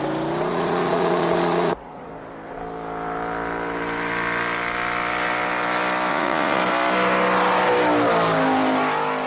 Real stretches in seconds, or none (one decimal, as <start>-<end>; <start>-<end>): 0.0-0.5; 2.1-6.1; 6.6-9.3